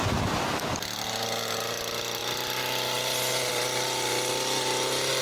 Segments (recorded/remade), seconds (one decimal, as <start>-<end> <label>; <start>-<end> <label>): 0.0-5.2 recorded